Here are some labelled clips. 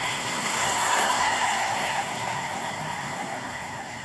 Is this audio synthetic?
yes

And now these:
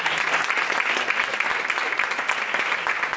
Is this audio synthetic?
no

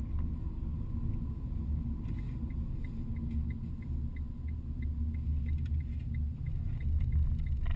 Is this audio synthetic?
no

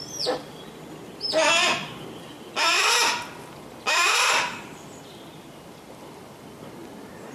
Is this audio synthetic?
no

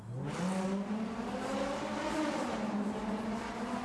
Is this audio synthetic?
no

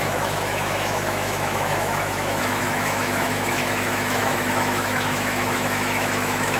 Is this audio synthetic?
yes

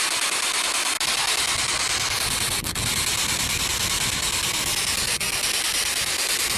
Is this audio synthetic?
no